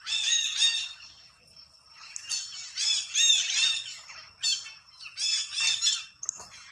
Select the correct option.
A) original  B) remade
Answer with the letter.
A